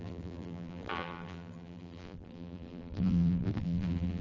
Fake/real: fake